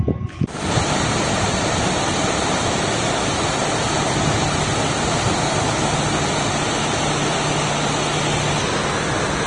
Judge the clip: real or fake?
real